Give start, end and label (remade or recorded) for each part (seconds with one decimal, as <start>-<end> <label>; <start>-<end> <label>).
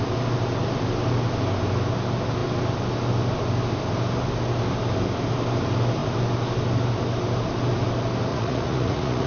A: 0.0-8.3 recorded; 8.3-9.3 remade